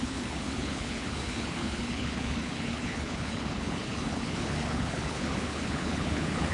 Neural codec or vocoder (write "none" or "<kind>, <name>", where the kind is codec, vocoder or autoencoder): codec, HILCodec